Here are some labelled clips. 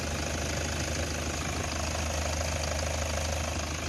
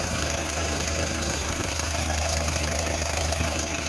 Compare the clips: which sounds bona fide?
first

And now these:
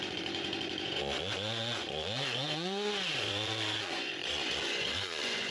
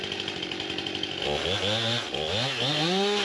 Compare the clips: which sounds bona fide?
second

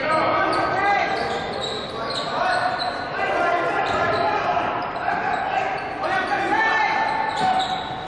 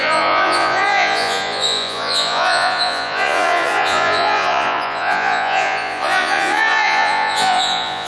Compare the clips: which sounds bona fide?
first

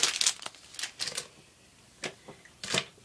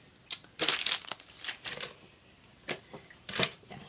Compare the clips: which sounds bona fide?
first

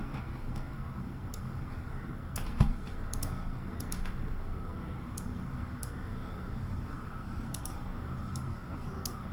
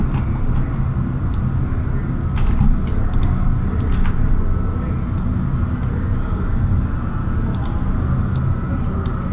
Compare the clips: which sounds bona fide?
second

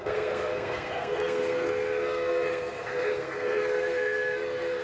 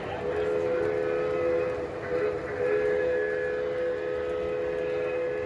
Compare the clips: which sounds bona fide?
second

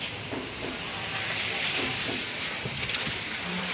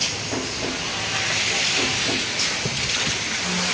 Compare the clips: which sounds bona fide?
second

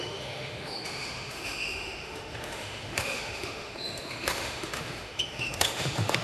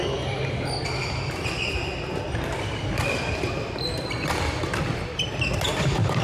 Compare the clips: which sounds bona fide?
second